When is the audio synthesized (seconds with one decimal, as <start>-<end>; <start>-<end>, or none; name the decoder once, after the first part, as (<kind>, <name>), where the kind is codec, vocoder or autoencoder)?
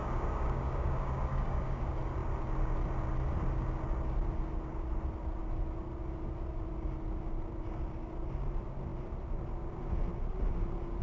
0.0-1.8 (codec, DAC)